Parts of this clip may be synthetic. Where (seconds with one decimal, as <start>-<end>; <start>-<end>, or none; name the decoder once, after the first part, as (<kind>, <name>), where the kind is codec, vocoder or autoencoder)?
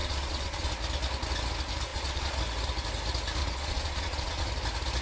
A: 0.0-0.7 (vocoder, Vocos); 1.9-2.4; 3.4-4.5